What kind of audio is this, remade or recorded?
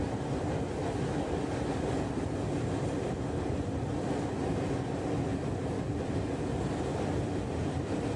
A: recorded